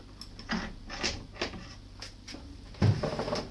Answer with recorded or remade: recorded